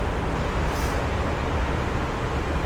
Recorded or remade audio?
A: recorded